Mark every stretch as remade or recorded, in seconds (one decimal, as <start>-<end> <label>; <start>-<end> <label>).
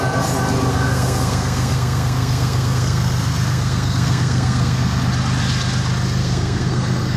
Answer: 0.0-0.7 recorded; 0.7-5.0 remade; 5.0-6.2 recorded; 6.2-7.2 remade